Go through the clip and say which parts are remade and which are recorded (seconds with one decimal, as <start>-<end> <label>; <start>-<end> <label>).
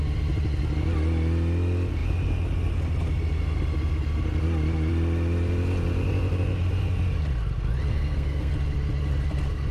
0.0-7.9 recorded; 7.9-8.5 remade; 8.5-9.7 recorded